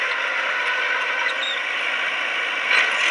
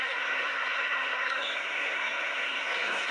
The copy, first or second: second